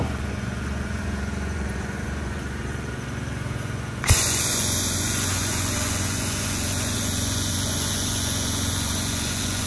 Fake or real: fake